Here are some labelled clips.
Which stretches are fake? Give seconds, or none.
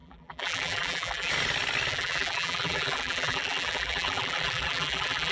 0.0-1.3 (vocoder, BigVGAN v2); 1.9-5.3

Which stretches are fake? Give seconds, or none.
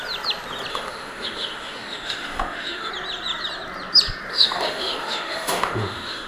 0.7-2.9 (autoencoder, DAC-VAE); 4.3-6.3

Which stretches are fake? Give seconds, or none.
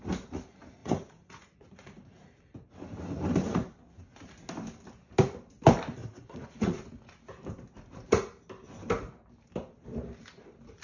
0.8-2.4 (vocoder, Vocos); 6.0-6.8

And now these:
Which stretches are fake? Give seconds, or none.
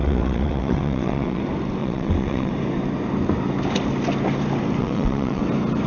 0.0-1.4 (vocoder, WaveNeXt); 1.8-2.5; 4.8-5.4